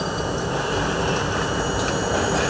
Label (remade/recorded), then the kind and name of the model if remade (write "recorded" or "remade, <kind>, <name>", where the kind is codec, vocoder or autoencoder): recorded